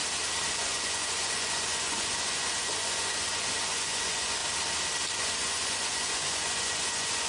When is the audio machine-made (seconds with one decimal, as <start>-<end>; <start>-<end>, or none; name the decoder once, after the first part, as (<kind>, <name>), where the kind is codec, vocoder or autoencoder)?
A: 0.5-4.4 (vocoder, Vocos); 5.1-7.3